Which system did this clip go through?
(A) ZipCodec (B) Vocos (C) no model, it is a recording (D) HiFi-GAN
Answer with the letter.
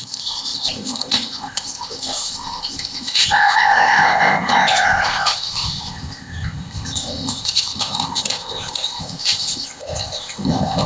A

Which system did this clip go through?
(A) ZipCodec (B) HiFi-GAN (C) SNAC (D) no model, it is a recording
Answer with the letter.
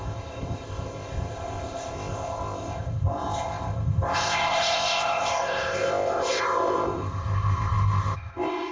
A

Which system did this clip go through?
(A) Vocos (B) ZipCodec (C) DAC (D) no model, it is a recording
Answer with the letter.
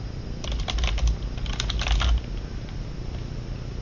D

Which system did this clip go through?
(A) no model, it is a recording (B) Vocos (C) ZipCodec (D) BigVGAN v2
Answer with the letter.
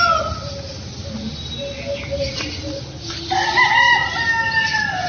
A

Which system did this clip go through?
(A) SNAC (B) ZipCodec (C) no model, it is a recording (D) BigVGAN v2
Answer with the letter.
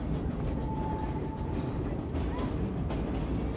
C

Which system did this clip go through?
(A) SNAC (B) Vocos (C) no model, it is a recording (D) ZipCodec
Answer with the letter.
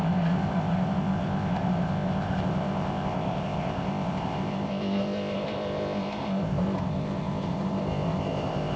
D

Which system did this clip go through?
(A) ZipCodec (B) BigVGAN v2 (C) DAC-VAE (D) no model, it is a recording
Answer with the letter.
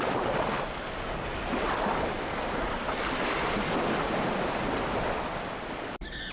D